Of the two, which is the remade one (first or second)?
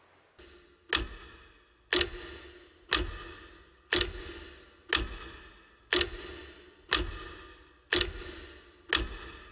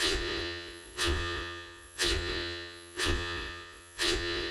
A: second